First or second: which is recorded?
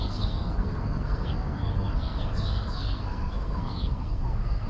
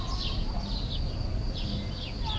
second